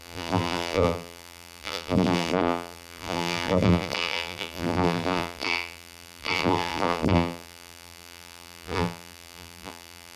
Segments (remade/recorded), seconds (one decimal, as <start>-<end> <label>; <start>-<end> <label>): 0.0-10.2 remade